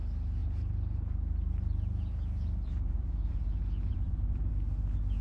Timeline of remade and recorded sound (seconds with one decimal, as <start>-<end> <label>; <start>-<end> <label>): 0.0-0.4 recorded; 0.4-3.5 remade; 3.5-3.9 recorded; 3.9-4.5 remade; 4.5-5.2 recorded